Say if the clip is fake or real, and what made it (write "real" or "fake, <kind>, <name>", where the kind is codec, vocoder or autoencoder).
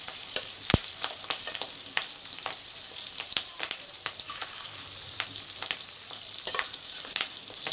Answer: fake, vocoder, BigVGAN v2